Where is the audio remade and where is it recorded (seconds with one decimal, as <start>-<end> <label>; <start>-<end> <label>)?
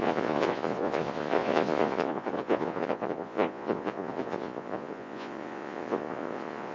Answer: 0.0-6.7 remade